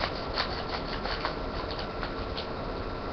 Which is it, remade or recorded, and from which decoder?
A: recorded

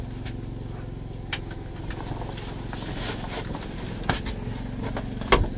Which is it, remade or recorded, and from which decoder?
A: recorded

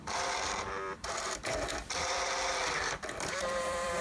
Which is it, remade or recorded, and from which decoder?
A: remade, vocoder, BigVGAN v2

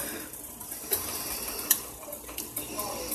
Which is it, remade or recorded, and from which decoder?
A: remade, vocoder, BigVGAN v2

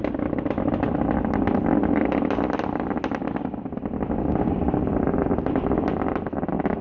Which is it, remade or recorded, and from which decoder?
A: recorded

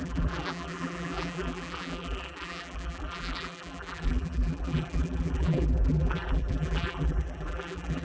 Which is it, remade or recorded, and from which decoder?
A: remade, vocoder, BigVGAN v2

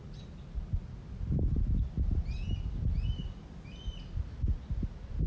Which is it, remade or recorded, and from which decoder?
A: recorded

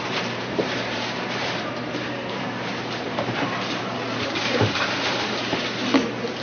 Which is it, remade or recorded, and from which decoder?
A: remade, vocoder, BigVGAN v2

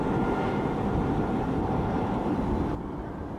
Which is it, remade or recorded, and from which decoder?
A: remade, vocoder, BigVGAN v2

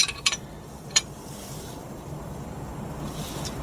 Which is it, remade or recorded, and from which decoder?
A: remade, vocoder, BigVGAN v2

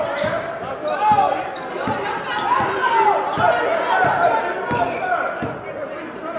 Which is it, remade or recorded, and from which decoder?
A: recorded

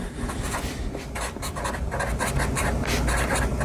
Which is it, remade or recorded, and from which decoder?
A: remade, vocoder, BigVGAN v2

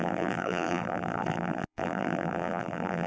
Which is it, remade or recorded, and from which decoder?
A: remade, vocoder, BigVGAN v2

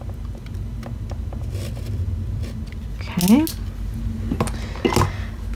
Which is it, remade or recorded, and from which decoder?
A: recorded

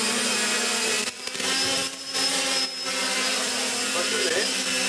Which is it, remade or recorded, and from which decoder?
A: recorded